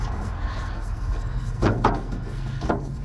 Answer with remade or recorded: remade